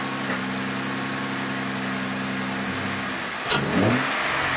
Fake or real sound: real